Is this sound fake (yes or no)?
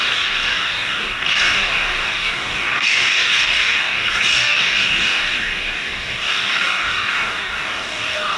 yes